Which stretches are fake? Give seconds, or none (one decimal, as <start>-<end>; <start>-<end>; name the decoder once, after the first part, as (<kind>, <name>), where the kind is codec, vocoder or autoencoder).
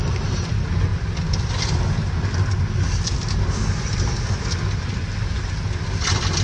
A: none